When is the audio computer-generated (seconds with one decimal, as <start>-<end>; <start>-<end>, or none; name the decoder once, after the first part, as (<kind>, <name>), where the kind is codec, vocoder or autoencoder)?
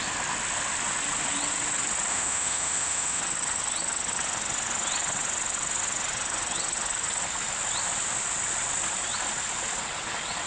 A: 2.1-3.2 (autoencoder, DAC-VAE)